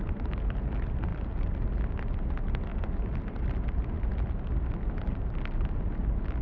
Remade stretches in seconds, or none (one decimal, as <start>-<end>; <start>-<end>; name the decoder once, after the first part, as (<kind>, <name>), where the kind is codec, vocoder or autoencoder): none